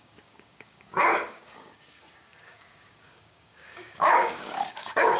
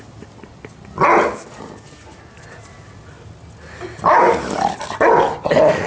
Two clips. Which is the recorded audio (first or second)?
second